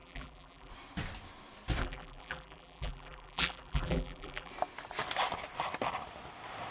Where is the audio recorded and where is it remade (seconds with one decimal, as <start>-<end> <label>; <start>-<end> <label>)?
0.0-0.7 remade; 0.7-1.8 recorded; 1.8-4.5 remade; 4.5-6.7 recorded